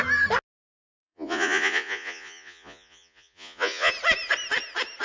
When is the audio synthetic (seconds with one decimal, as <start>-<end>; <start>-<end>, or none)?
0.9-3.9